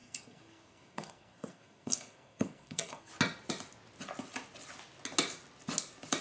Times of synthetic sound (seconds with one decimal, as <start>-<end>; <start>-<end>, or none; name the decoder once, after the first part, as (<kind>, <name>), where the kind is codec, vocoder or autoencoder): 0.0-3.1 (codec, SNAC)